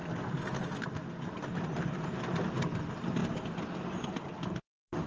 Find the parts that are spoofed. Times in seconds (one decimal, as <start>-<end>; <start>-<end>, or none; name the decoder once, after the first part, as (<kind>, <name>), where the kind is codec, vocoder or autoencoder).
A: none